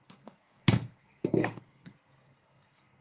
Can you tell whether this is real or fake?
fake